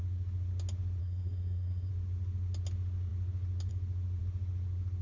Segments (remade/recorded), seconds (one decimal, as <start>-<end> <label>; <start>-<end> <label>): 0.0-1.0 recorded; 1.0-1.9 remade; 1.9-5.0 recorded